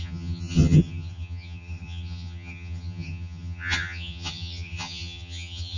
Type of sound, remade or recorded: remade